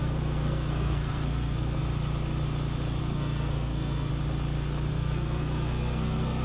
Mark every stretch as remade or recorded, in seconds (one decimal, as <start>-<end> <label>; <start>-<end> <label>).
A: 0.0-1.8 remade; 1.8-3.0 recorded; 3.0-4.1 remade; 4.1-4.9 recorded; 4.9-6.4 remade